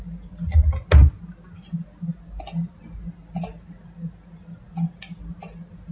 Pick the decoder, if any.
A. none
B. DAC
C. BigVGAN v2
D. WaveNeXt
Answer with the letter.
A